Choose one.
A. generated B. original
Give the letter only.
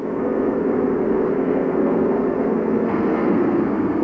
A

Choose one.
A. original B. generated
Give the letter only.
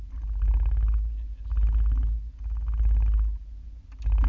A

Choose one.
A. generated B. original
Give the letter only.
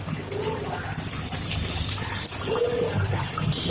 B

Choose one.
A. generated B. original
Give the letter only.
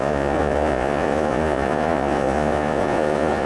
A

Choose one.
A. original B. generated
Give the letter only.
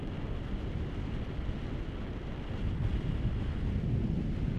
A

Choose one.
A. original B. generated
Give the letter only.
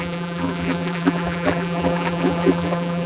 B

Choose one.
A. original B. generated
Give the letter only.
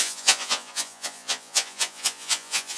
B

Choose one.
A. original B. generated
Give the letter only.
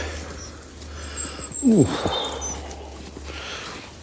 A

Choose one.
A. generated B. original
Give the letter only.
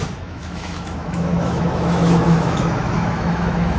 A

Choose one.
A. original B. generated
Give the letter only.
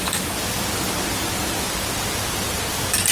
A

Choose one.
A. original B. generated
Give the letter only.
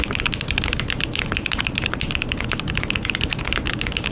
A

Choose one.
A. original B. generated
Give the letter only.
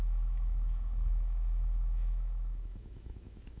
B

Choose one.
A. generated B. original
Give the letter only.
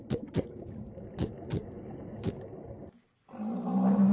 B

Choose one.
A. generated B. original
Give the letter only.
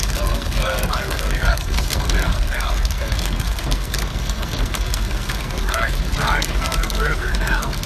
A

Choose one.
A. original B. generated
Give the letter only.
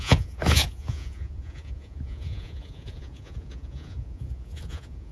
B